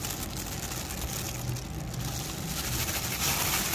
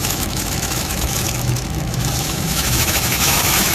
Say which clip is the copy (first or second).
second